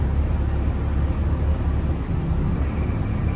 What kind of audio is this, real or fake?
real